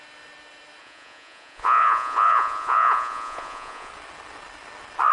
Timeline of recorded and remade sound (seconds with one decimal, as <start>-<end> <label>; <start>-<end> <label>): 0.0-0.8 recorded; 0.8-3.9 remade; 3.9-5.1 recorded